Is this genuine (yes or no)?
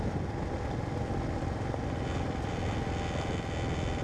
yes